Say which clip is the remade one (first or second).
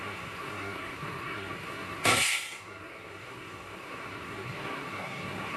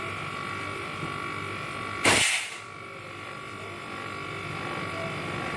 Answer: first